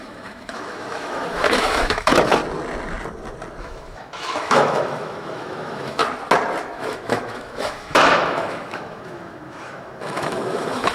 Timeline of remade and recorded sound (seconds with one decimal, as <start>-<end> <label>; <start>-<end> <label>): 0.0-2.4 remade; 2.4-3.6 recorded; 3.6-6.0 remade; 6.0-6.6 recorded; 6.6-10.9 remade